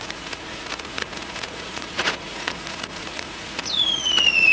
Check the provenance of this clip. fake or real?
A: fake